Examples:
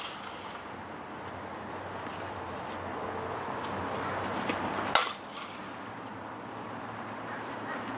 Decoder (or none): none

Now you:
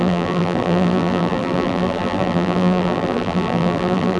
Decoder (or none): vocoder, BigVGAN v2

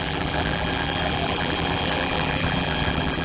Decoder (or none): vocoder, BigVGAN v2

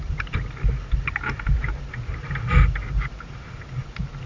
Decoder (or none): none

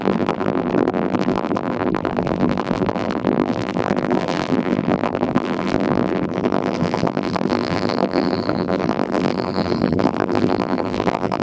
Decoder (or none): vocoder, BigVGAN v2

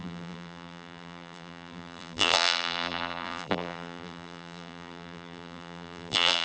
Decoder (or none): vocoder, BigVGAN v2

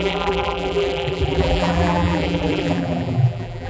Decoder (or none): vocoder, BigVGAN v2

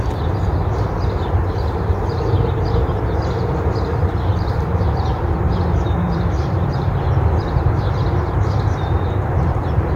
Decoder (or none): vocoder, BigVGAN v2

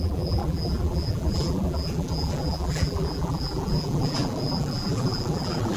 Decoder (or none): vocoder, BigVGAN v2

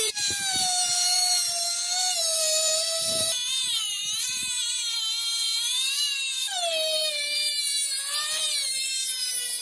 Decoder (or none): vocoder, BigVGAN v2